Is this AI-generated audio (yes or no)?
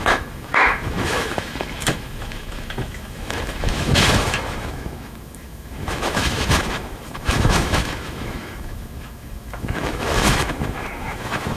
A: yes